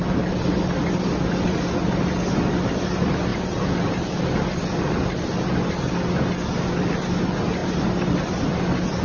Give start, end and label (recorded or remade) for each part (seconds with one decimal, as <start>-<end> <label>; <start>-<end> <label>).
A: 0.0-3.3 recorded; 3.3-4.2 remade; 4.2-9.0 recorded